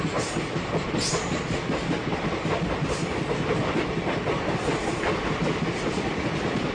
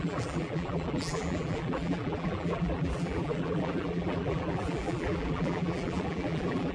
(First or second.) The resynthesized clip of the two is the second